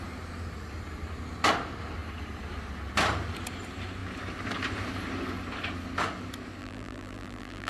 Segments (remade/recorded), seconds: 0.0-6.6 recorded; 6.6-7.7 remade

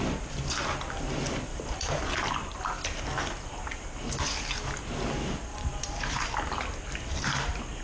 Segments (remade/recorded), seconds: 0.0-1.5 recorded; 1.5-2.0 remade; 2.0-5.5 recorded; 5.5-6.5 remade; 6.5-7.8 recorded